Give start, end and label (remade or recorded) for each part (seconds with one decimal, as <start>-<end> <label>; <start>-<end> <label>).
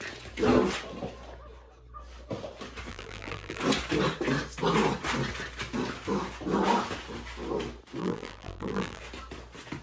0.0-2.9 recorded; 2.9-3.6 remade; 3.6-8.0 recorded; 8.0-9.0 remade; 9.0-9.8 recorded